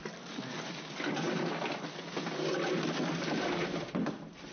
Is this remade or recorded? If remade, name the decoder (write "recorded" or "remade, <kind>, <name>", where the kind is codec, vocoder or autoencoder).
recorded